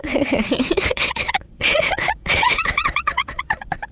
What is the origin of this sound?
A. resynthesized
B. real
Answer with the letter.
A